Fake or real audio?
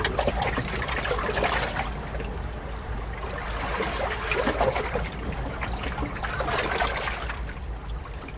real